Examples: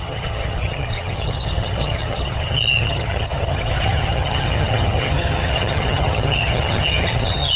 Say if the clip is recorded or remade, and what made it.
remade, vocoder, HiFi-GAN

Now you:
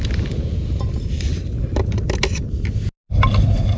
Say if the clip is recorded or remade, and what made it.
recorded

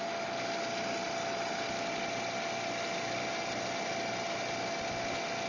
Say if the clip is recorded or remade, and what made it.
recorded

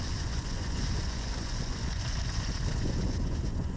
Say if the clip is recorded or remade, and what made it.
remade, vocoder, Vocos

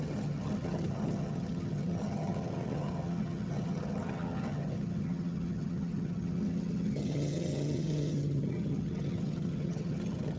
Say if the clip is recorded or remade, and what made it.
remade, vocoder, HiFi-GAN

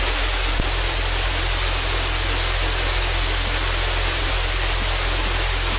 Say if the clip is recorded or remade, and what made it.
recorded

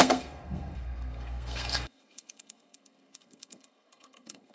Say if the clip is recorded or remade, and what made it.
remade, codec, SNAC